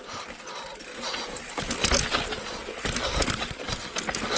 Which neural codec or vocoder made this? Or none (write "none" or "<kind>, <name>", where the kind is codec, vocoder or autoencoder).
none